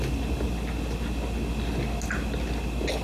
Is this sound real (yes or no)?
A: yes